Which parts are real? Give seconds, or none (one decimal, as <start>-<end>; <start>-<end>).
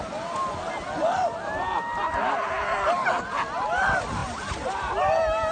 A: 0.0-2.0; 2.5-4.2; 4.9-5.5